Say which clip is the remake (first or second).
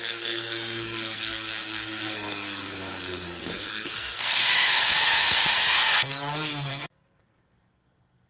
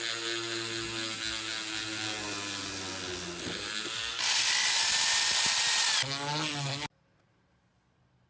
first